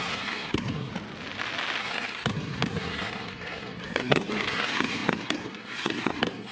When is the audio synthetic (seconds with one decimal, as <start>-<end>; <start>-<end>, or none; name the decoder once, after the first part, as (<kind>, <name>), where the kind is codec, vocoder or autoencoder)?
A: 0.0-0.9 (codec, SNAC); 1.8-6.5